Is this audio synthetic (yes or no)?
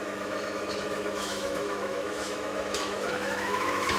yes